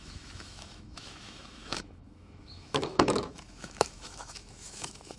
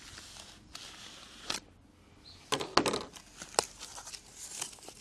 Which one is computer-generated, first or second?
first